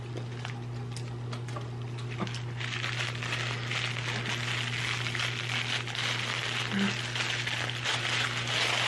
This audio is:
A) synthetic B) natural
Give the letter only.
B